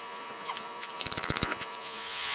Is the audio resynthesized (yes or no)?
yes